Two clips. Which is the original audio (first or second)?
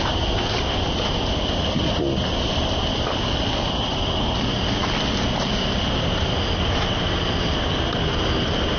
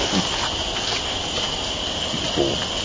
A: first